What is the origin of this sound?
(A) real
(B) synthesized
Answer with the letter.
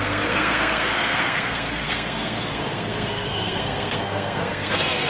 B